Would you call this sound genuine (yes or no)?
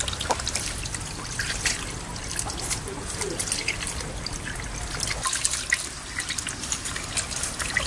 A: yes